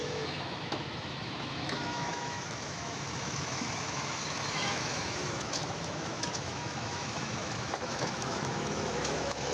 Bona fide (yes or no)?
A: no